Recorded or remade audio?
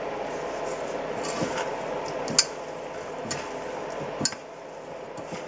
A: recorded